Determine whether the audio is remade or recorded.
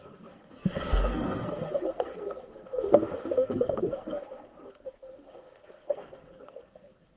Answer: remade